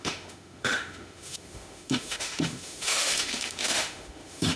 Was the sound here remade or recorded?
remade